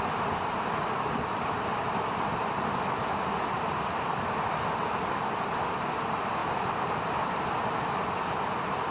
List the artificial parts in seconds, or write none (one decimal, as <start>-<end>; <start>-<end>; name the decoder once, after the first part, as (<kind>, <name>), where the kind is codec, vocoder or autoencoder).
0.0-8.9 (vocoder, BigVGAN v2)